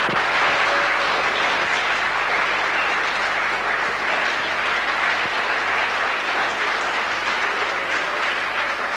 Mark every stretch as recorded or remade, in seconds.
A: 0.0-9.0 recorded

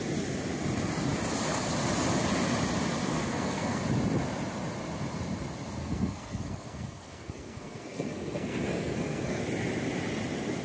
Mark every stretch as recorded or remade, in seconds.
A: 0.0-3.0 recorded; 3.0-3.8 remade; 3.8-5.8 recorded; 5.8-9.4 remade; 9.4-10.6 recorded